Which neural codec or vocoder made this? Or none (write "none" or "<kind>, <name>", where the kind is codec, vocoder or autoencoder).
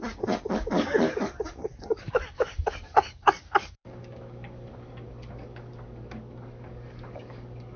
codec, DAC